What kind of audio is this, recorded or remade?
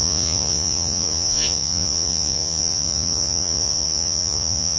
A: remade